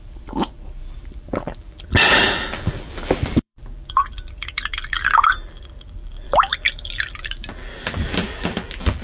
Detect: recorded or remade remade